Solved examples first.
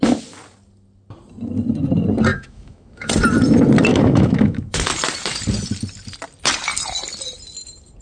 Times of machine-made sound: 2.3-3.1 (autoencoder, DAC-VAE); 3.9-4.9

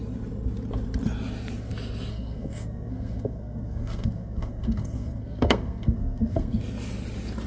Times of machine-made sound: 2.1-6.6 (codec, SNAC)

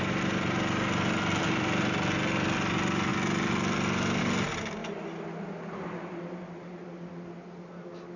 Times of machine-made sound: none

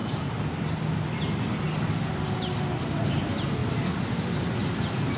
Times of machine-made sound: none

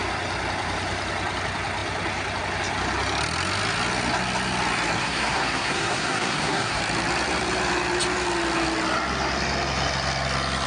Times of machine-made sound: 5.0-6.8 (codec, SNAC)